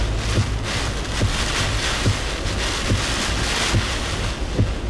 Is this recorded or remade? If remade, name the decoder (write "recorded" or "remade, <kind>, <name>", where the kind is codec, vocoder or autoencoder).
recorded